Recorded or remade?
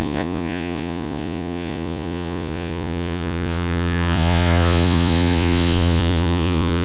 remade